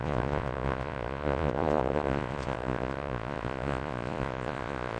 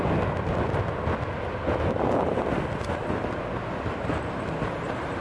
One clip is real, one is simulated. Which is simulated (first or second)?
first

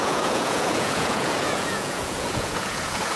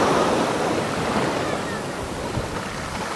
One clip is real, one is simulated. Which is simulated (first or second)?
first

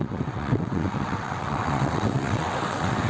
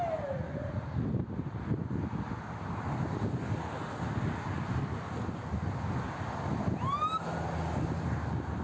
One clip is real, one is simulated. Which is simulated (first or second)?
first